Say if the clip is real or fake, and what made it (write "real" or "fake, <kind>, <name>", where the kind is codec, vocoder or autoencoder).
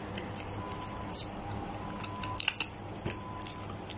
real